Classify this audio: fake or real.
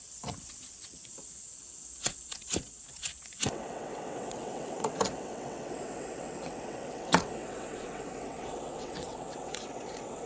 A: fake